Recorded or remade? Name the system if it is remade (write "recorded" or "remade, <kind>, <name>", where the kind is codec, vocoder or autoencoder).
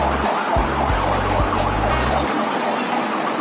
recorded